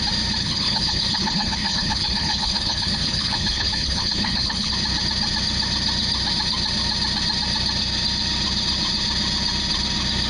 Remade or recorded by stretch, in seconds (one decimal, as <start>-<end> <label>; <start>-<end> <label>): 0.0-0.4 recorded; 0.4-4.7 remade; 4.7-10.3 recorded